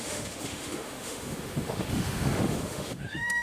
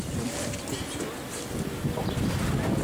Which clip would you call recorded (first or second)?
second